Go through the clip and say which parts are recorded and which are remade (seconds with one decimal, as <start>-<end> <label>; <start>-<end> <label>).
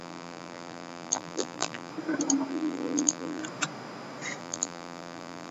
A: 0.0-1.9 remade; 1.9-2.5 recorded; 2.5-3.4 remade; 3.4-4.4 recorded; 4.4-5.5 remade